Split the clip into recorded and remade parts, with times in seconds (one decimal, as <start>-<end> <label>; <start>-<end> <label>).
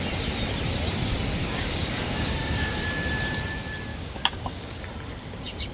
0.0-1.4 recorded; 1.4-2.8 remade; 2.8-3.9 recorded; 3.9-4.8 remade; 4.8-5.7 recorded